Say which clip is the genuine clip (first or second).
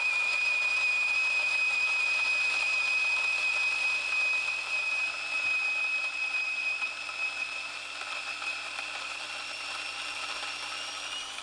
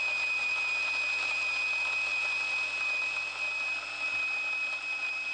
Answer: second